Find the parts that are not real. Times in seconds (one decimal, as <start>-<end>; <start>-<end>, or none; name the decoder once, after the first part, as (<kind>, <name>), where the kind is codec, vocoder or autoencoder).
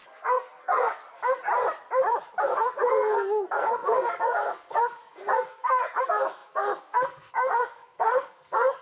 0.0-1.5 (codec, SNAC); 2.4-8.8